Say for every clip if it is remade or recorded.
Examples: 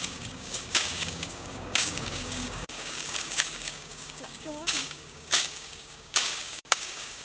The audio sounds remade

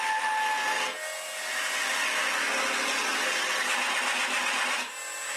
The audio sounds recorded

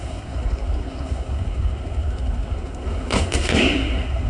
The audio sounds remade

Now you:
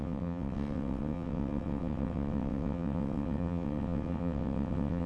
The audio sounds remade